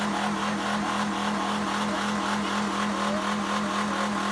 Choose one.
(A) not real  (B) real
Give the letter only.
B